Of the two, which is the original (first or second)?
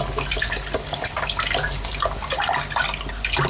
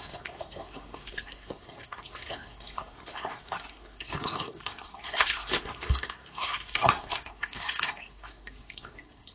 first